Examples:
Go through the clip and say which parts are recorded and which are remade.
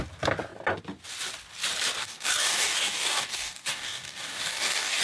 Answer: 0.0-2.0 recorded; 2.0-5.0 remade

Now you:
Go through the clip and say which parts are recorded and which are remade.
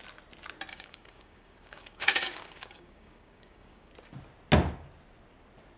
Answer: 0.0-0.7 recorded; 0.7-3.9 remade; 3.9-5.8 recorded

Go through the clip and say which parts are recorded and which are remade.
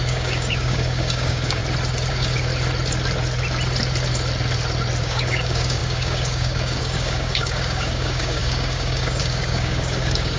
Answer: 0.0-1.6 remade; 1.6-2.1 recorded; 2.1-2.5 remade; 2.5-5.0 recorded; 5.0-10.4 remade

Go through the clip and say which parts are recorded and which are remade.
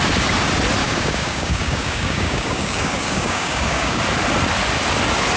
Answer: 0.0-0.8 recorded; 0.8-4.0 remade; 4.0-5.4 recorded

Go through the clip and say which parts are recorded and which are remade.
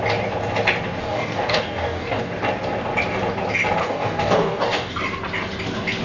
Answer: 0.0-1.0 recorded; 1.0-2.2 remade; 2.2-3.8 recorded; 3.8-4.9 remade; 4.9-6.0 recorded